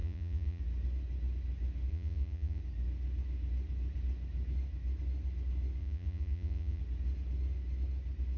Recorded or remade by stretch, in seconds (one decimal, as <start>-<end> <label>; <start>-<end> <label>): 0.0-0.6 remade; 0.6-1.9 recorded; 1.9-2.6 remade; 2.6-5.8 recorded; 5.8-6.8 remade; 6.8-8.4 recorded